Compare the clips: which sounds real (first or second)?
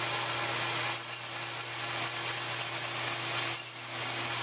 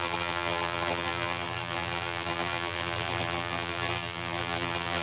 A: first